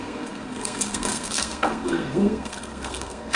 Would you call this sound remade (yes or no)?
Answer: yes